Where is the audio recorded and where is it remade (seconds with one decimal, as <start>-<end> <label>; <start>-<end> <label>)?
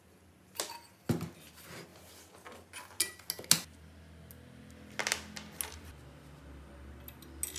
0.0-7.6 recorded